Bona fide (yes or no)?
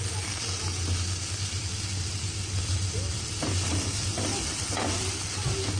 yes